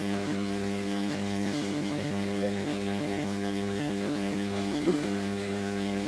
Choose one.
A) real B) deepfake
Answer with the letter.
B